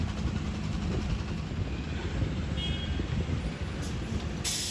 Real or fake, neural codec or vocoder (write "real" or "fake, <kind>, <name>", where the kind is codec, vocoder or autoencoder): real